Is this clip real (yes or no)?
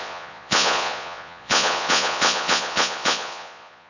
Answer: no